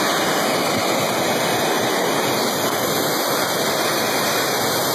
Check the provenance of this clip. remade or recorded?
recorded